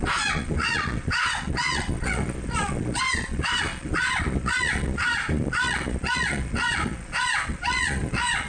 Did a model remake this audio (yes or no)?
yes